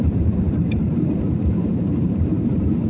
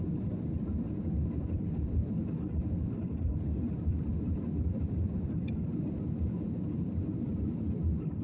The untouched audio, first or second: second